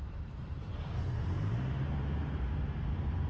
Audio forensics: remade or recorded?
remade